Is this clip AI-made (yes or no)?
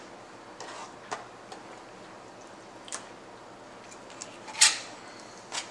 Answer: no